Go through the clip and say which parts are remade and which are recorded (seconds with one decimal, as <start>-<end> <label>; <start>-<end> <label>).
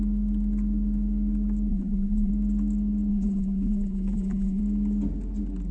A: 0.0-1.7 recorded; 1.7-2.3 remade; 2.3-3.1 recorded; 3.1-4.6 remade; 4.6-5.7 recorded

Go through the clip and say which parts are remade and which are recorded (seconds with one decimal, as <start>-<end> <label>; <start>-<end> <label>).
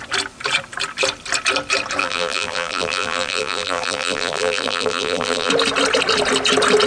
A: 0.0-2.0 recorded; 2.0-5.5 remade; 5.5-6.9 recorded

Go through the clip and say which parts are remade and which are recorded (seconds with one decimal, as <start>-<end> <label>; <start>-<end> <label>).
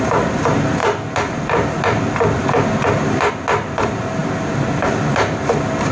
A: 0.0-5.9 recorded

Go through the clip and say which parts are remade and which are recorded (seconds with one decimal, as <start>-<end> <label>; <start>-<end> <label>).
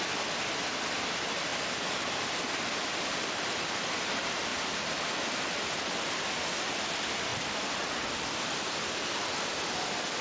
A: 0.0-1.5 remade; 1.5-2.8 recorded; 2.8-10.2 remade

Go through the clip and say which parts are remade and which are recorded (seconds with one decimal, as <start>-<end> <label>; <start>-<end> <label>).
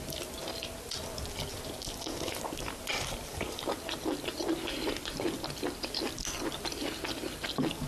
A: 0.0-2.9 recorded; 2.9-3.7 remade; 3.7-7.9 recorded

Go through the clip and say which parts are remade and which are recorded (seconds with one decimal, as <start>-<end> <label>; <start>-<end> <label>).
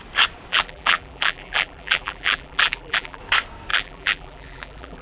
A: 0.0-0.5 recorded; 0.5-3.2 remade; 3.2-3.7 recorded; 3.7-5.0 remade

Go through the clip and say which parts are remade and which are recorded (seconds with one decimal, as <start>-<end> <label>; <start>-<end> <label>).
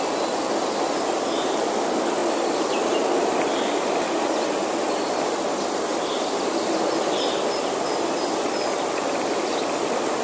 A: 0.0-10.2 recorded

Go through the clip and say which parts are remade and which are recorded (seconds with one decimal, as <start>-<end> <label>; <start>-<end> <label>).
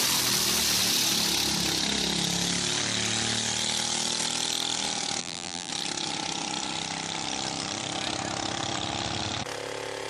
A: 0.0-5.2 recorded; 5.2-5.7 remade; 5.7-10.1 recorded